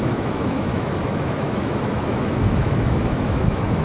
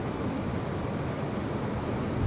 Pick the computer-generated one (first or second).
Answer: first